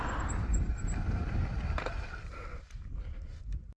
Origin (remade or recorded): recorded